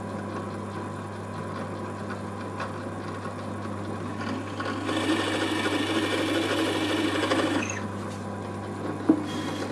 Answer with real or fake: real